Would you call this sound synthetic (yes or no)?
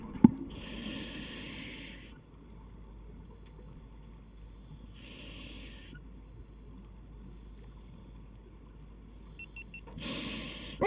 no